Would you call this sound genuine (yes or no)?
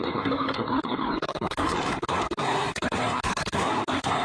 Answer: no